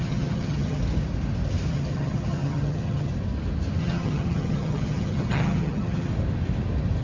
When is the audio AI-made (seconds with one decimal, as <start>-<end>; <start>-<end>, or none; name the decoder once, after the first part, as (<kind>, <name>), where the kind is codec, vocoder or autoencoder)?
0.0-0.8 (vocoder, HiFi-GAN); 1.7-3.1; 3.8-6.1

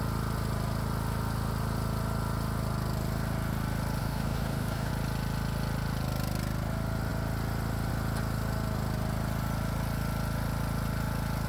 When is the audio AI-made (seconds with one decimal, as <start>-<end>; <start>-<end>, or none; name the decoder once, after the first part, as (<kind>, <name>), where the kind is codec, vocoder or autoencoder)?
4.0-4.9 (codec, DAC)

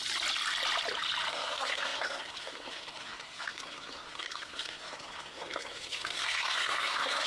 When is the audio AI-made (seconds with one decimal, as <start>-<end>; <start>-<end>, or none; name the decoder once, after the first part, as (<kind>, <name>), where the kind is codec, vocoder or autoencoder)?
1.3-7.3 (codec, SNAC)

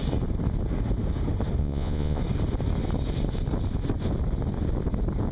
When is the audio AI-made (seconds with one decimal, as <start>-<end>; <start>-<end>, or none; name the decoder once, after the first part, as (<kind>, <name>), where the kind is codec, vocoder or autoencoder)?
1.6-2.2 (vocoder, Vocos)

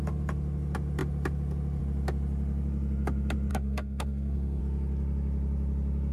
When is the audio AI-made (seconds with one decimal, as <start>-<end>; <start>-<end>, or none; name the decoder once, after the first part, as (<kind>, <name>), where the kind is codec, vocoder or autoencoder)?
3.5-4.6 (codec, SNAC)

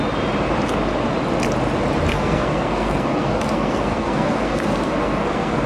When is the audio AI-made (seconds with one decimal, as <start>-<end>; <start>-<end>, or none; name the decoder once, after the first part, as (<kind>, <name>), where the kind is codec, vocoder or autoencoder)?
2.1-5.7 (codec, SNAC)